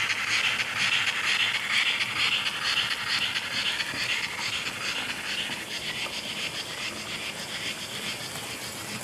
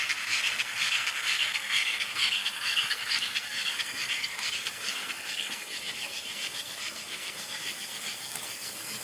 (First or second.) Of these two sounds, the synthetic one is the second